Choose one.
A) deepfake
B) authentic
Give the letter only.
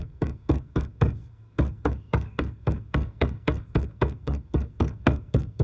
A